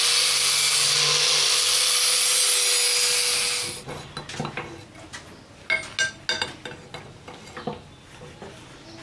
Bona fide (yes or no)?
yes